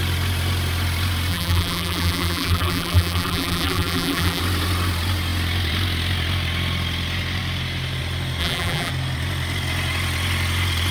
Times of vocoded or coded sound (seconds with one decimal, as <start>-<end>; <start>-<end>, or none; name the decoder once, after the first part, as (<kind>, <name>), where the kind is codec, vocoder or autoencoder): 1.3-4.4 (vocoder, BigVGAN v2); 8.4-8.9